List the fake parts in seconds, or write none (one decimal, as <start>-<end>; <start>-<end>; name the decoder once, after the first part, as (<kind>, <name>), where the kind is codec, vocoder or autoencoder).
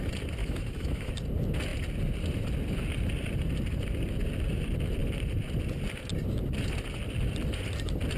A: 0.4-1.1 (autoencoder, DAC-VAE)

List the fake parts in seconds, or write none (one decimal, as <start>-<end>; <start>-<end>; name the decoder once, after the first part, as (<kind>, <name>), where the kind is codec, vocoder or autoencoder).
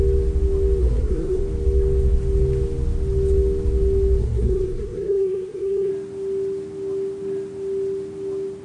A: 0.8-1.4 (codec, SNAC); 4.2-5.9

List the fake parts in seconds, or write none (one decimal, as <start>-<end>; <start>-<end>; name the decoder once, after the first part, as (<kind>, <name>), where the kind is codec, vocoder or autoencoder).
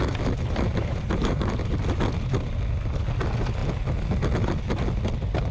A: 0.7-1.8 (vocoder, BigVGAN v2)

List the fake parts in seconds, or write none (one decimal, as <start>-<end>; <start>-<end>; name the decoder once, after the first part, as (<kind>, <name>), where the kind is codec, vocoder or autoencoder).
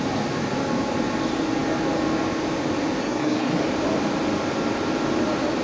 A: 3.0-3.6 (codec, SNAC)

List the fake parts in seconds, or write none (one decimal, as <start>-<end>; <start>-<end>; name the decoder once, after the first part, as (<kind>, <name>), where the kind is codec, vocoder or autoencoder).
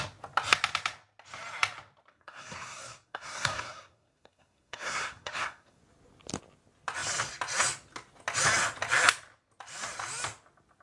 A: 2.1-5.8 (codec, SNAC)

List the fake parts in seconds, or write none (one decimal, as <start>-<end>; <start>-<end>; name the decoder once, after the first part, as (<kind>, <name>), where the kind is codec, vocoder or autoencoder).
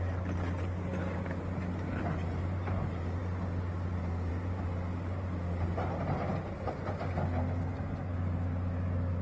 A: none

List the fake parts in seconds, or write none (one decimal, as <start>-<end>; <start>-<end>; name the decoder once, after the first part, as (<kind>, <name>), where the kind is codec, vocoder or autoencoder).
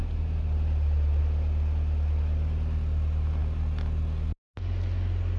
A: none